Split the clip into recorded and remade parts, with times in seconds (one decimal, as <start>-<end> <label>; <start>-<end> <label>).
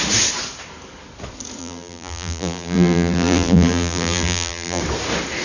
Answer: 0.0-1.6 recorded; 1.6-4.8 remade; 4.8-5.4 recorded